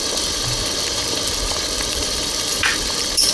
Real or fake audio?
fake